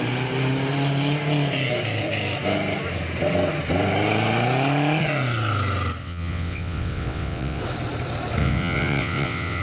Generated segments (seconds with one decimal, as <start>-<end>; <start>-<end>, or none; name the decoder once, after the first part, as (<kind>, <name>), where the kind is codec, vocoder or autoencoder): 6.0-7.6 (vocoder, WaveNeXt); 8.4-9.6